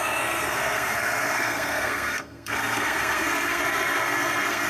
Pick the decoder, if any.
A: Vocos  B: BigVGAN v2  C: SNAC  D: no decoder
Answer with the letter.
C